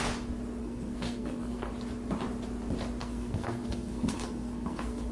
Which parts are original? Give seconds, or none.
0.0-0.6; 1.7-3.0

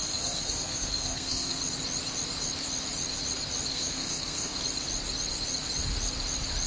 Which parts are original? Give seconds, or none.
1.6-3.7; 4.6-6.7

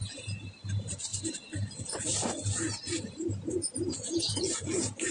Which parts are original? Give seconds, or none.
0.0-5.1

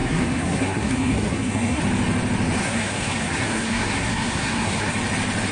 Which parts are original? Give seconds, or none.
1.8-2.6; 4.9-5.5

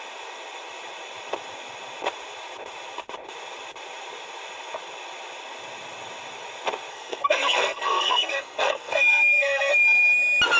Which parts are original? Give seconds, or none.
0.0-6.9; 9.7-10.6

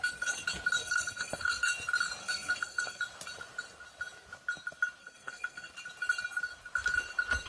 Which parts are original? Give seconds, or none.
0.0-0.8; 1.6-2.2; 3.0-5.0; 5.7-7.5

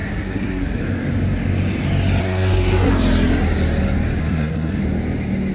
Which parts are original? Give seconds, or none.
0.8-2.2; 2.9-4.2; 4.8-5.5

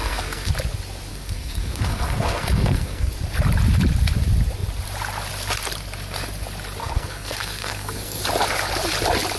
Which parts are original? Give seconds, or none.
0.5-1.1; 3.1-6.8; 8.2-9.4